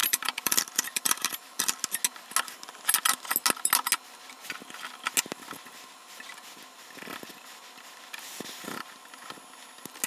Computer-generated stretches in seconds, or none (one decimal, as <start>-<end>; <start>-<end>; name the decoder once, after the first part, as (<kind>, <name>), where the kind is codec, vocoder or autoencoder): 0.0-1.8 (vocoder, BigVGAN v2)